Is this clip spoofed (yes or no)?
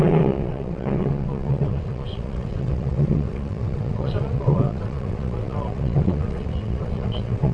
yes